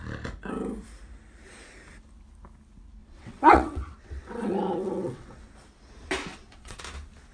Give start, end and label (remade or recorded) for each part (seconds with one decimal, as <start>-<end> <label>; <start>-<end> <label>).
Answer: 0.0-3.0 recorded; 3.0-5.4 remade; 5.4-6.3 recorded; 6.3-6.8 remade; 6.8-7.3 recorded